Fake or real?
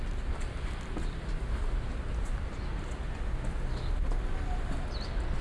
real